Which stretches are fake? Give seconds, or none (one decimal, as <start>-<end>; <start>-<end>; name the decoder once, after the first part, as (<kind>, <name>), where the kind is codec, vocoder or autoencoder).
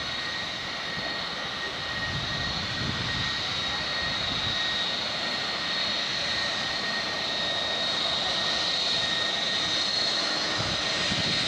9.9-10.7 (autoencoder, DAC-VAE)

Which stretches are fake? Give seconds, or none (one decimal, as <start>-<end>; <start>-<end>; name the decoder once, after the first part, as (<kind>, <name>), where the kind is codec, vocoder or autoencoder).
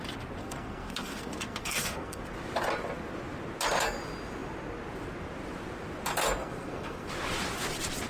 0.4-2.2 (codec, SNAC); 6.4-7.1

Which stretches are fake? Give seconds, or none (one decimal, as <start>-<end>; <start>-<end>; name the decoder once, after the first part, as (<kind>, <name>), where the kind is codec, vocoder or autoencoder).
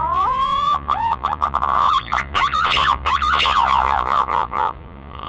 0.0-5.3 (vocoder, Vocos)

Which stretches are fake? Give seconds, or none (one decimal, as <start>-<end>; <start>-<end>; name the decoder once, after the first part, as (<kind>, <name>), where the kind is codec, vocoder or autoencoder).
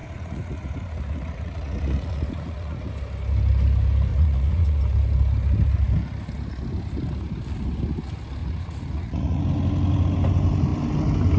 0.0-2.9 (vocoder, Vocos); 4.1-4.8; 8.4-9.4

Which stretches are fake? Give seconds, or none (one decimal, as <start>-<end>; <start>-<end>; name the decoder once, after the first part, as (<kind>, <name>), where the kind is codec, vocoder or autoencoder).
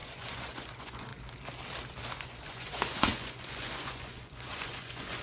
0.0-1.1 (vocoder, Vocos); 2.1-5.2